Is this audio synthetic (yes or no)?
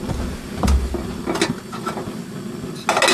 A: no